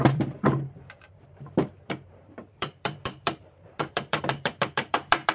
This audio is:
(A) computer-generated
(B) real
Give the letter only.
A